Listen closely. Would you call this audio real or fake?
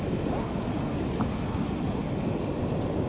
real